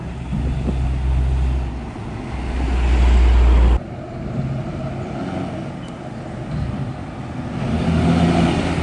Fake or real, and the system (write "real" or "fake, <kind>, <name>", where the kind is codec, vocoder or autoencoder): real